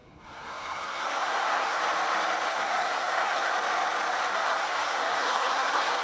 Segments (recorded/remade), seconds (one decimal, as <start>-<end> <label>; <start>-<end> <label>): 0.0-1.8 remade; 1.8-2.5 recorded; 2.5-3.5 remade; 3.5-4.3 recorded; 4.3-6.0 remade

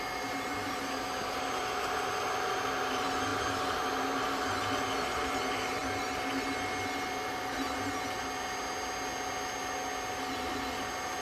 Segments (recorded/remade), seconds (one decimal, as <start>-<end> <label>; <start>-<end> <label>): 0.0-0.6 recorded; 0.6-2.1 remade; 2.1-3.3 recorded; 3.3-4.5 remade; 4.5-11.2 recorded

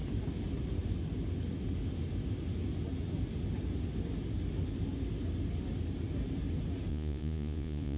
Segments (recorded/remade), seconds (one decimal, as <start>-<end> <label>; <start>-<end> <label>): 0.0-6.9 recorded; 6.9-8.0 remade

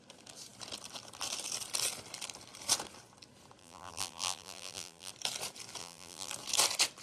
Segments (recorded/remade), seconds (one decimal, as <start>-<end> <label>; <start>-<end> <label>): 0.0-3.6 recorded; 3.6-5.1 remade; 5.1-5.8 recorded; 5.8-6.3 remade; 6.3-7.0 recorded

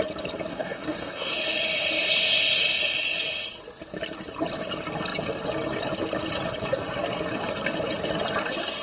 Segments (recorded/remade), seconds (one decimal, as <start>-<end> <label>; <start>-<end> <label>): 0.0-0.5 recorded; 0.5-1.3 remade; 1.3-8.8 recorded